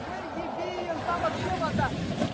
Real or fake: real